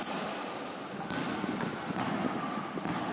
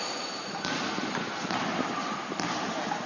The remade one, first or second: second